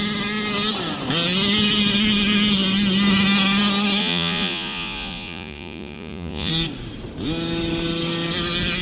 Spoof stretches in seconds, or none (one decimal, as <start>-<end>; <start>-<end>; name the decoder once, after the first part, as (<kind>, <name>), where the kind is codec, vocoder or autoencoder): 4.0-6.5 (vocoder, Vocos)